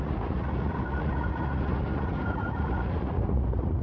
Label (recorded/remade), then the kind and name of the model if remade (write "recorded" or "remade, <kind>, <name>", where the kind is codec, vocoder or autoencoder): remade, vocoder, Vocos